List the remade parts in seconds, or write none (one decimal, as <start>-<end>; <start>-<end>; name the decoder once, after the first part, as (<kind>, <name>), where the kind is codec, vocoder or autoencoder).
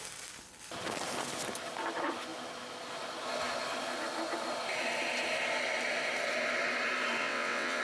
7.2-7.8 (vocoder, WaveNeXt)